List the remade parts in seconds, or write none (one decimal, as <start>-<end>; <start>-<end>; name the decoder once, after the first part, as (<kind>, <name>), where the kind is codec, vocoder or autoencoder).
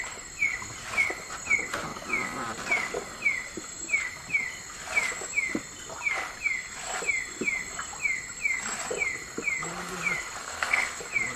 10.4-11.0 (codec, SNAC)